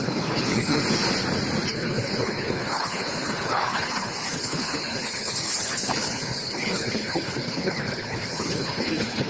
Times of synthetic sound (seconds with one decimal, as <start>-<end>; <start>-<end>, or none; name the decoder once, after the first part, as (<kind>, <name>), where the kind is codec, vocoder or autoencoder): 0.0-0.8 (codec, HILCodec); 1.7-9.3